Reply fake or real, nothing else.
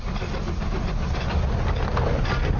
real